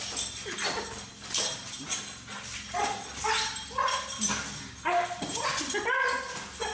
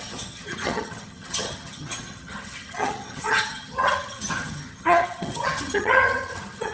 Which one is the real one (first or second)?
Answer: first